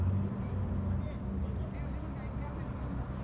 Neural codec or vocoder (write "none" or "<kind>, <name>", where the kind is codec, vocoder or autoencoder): none